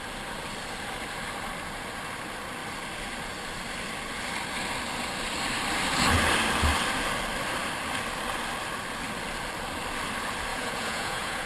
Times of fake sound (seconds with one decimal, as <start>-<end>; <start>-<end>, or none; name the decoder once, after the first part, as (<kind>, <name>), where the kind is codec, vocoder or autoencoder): 10.5-11.5 (vocoder, Vocos)

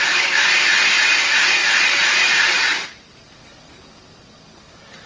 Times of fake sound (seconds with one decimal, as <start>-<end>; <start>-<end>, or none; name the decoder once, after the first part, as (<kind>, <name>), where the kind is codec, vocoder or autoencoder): 1.6-3.4 (vocoder, BigVGAN v2)

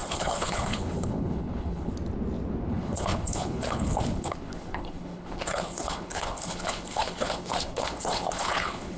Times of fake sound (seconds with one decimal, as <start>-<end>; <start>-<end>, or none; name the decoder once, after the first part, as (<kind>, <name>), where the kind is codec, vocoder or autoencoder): 0.0-1.9 (codec, HILCodec); 2.7-9.0

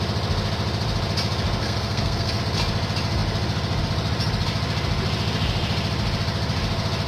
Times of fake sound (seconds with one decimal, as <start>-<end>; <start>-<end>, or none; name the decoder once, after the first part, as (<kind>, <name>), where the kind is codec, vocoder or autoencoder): 1.6-2.4 (codec, SNAC)

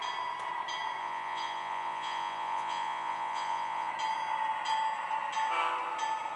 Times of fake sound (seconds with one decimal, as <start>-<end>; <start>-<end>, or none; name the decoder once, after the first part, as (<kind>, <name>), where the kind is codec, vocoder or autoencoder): 1.0-3.9 (vocoder, Vocos)

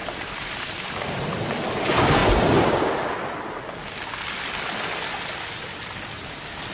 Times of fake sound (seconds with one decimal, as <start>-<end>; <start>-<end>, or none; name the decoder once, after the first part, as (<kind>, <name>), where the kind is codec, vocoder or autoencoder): 0.0-1.5 (vocoder, BigVGAN v2); 2.2-3.1

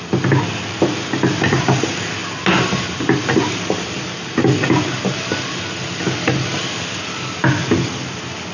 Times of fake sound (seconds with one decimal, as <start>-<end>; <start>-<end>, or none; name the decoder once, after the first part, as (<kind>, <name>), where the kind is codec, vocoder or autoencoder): none